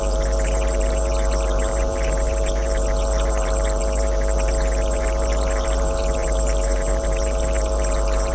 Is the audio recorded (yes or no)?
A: no